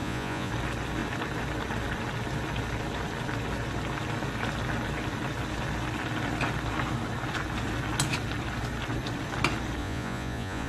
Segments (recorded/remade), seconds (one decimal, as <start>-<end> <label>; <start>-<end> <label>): 0.0-0.5 remade; 0.5-9.8 recorded; 9.8-10.7 remade